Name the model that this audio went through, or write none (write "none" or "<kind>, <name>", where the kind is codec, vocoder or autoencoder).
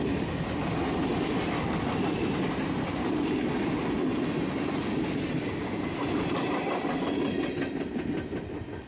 none